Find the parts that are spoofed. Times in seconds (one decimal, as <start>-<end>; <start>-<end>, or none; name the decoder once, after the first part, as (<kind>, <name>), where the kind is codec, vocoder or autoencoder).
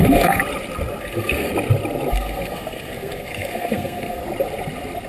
0.0-0.4 (codec, SNAC); 1.0-1.5; 2.1-4.2